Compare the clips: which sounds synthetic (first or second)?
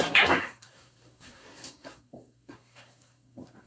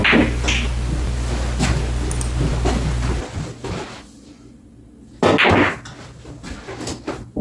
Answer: first